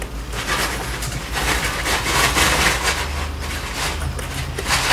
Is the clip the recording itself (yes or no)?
yes